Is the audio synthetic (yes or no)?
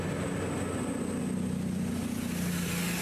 no